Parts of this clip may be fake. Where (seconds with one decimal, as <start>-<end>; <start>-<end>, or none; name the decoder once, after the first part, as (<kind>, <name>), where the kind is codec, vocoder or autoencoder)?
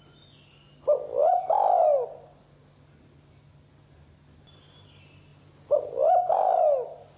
none